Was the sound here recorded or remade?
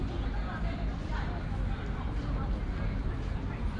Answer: recorded